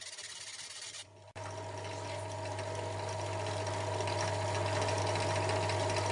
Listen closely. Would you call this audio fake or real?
real